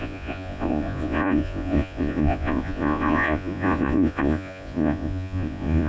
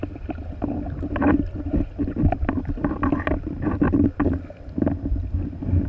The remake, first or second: first